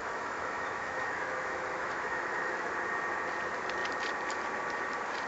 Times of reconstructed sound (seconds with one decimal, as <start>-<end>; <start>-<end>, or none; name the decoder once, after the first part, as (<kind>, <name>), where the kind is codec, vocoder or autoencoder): 0.0-2.7 (autoencoder, DAC-VAE)